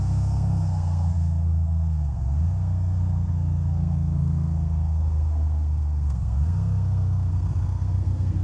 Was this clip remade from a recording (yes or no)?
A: yes